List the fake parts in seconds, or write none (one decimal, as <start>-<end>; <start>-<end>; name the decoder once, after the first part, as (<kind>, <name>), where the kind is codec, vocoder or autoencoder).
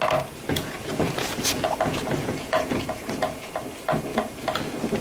0.5-3.5 (vocoder, Vocos)